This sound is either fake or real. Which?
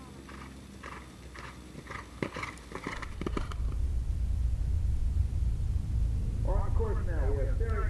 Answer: real